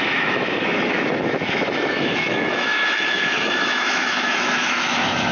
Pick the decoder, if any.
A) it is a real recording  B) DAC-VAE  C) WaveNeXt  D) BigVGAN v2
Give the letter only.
B